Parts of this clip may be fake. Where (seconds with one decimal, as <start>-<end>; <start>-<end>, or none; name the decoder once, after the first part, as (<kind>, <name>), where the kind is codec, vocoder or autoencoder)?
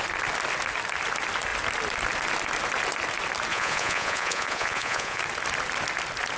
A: 3.5-5.2 (vocoder, Vocos)